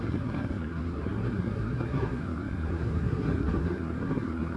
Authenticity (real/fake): fake